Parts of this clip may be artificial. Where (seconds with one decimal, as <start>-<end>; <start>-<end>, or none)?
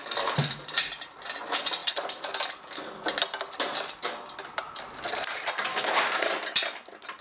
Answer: 5.7-6.3